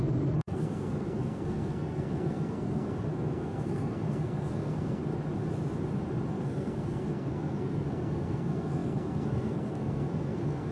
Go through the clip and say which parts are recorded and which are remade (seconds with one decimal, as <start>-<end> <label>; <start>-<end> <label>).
0.0-5.0 remade; 5.0-6.3 recorded; 6.3-10.7 remade